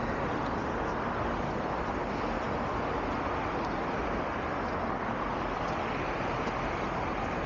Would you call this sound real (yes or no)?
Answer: yes